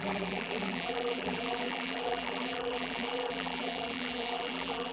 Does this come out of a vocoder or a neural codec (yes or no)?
yes